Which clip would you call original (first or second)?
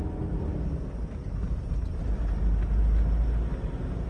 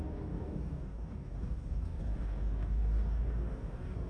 first